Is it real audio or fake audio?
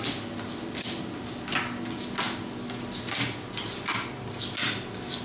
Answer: real